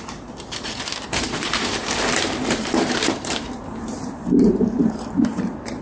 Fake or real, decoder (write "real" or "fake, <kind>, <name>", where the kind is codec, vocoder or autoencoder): fake, vocoder, BigVGAN v2